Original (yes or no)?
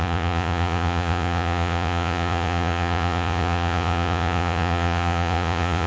no